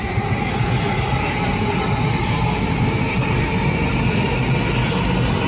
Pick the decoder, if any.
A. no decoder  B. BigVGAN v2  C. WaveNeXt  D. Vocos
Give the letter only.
A